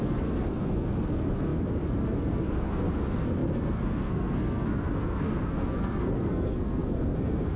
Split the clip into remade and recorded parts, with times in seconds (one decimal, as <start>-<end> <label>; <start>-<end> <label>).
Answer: 0.0-7.6 remade